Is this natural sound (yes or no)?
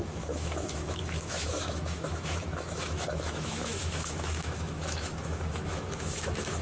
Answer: no